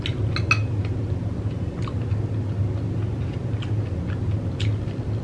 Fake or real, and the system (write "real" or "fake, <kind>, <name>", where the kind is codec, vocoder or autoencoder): real